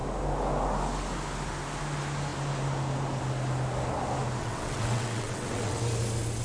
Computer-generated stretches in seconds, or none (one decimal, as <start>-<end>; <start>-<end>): 4.4-5.8